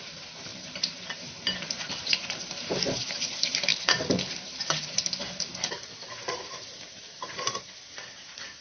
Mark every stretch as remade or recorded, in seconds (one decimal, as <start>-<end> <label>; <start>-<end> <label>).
0.0-0.5 recorded; 0.5-2.8 remade; 2.8-3.7 recorded; 3.7-7.6 remade; 7.6-8.6 recorded